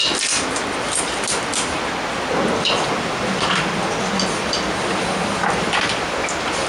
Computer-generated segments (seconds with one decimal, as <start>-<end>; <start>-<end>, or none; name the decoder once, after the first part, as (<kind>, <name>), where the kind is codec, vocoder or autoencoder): 2.6-6.7 (vocoder, BigVGAN v2)